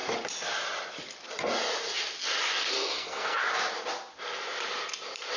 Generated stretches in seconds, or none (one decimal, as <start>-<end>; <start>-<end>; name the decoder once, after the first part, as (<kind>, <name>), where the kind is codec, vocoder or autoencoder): 2.8-3.4 (codec, SNAC)